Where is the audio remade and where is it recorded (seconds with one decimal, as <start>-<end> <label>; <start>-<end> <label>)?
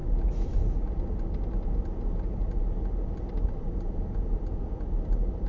0.0-5.5 recorded